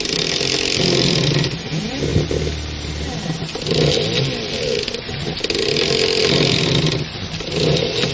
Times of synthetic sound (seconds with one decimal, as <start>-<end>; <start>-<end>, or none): none